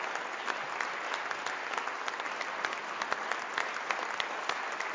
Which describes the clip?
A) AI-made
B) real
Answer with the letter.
B